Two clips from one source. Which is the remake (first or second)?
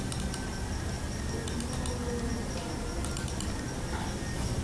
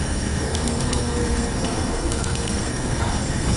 second